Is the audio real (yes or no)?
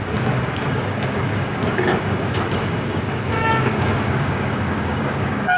no